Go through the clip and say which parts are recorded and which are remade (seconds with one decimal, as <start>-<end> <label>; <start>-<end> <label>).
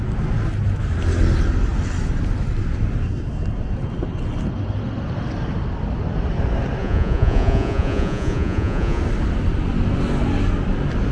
0.0-6.8 recorded; 6.8-9.0 remade; 9.0-11.1 recorded